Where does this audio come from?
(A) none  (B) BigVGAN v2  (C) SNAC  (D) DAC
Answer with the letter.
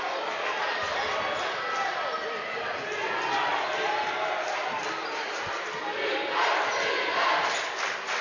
A